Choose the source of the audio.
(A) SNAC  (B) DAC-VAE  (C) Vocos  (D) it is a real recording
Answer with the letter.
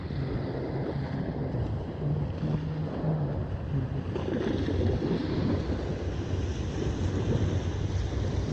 D